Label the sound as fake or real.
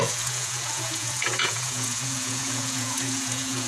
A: fake